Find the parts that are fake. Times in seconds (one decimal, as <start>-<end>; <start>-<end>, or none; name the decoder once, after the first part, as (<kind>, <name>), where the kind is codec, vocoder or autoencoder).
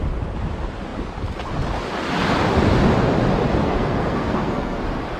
3.6-4.8 (codec, SNAC)